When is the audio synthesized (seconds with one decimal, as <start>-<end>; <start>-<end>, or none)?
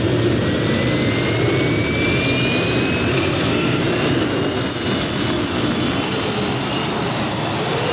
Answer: 3.1-3.8